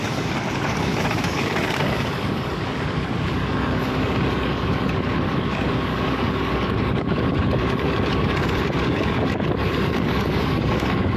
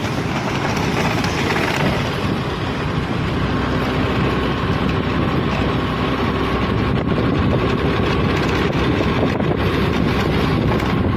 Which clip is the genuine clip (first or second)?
second